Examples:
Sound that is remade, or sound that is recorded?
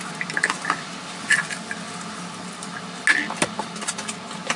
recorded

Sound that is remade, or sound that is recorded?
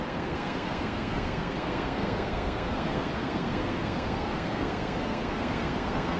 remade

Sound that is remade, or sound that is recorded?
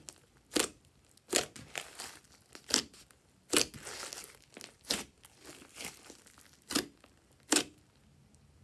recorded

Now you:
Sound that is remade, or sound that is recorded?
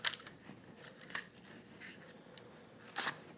recorded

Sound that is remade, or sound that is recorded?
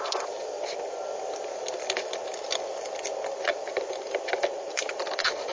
recorded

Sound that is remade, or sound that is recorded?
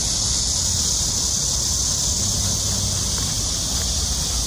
recorded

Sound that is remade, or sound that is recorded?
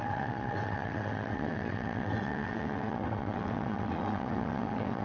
remade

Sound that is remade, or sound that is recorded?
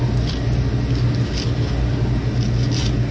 recorded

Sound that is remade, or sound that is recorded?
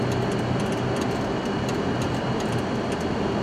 recorded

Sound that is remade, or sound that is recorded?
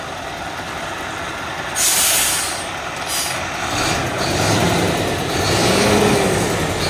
recorded